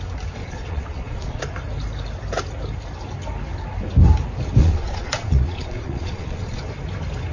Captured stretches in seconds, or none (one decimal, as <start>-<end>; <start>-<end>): 0.0-0.4; 1.4-4.6; 6.6-7.3